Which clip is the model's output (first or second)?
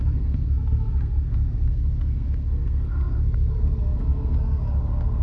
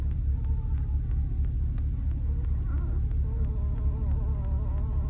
first